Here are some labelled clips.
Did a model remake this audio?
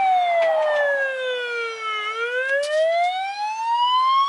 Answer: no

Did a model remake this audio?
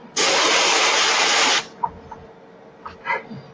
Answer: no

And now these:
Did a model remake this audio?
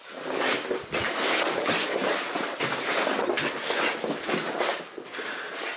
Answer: no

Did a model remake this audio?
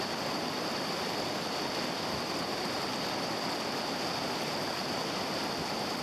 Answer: no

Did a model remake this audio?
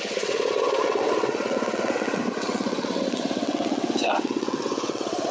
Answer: yes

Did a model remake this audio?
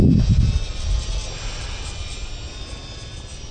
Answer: no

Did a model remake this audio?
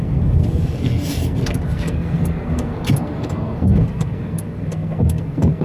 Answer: yes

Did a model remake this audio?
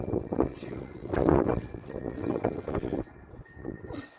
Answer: yes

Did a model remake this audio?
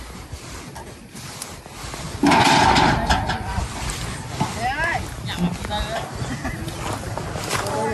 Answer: no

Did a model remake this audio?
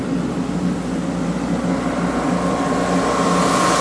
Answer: no